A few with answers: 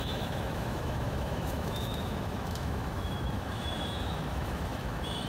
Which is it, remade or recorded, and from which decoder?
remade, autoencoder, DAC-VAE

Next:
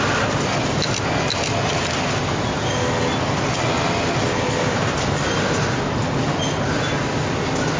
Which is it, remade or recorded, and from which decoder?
recorded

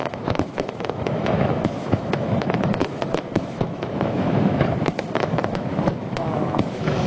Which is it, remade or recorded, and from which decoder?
remade, autoencoder, DAC-VAE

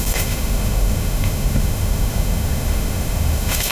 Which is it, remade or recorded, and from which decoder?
remade, autoencoder, DAC-VAE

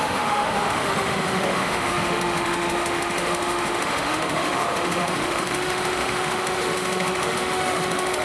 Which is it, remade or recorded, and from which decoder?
remade, autoencoder, DAC-VAE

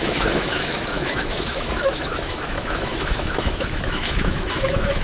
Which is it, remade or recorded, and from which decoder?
remade, autoencoder, DAC-VAE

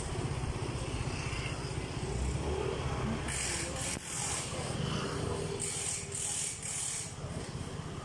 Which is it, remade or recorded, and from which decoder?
recorded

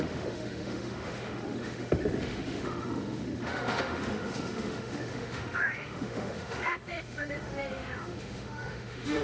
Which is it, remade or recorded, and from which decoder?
remade, autoencoder, DAC-VAE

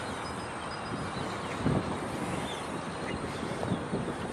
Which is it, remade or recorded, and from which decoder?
recorded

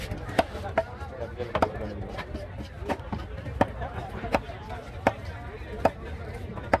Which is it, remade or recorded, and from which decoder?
recorded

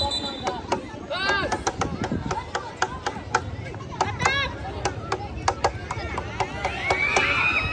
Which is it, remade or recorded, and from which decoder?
recorded